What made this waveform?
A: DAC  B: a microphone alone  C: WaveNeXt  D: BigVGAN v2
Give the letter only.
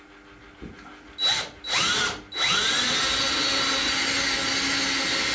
B